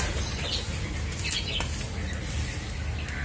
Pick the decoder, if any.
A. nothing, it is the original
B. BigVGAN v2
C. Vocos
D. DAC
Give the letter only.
A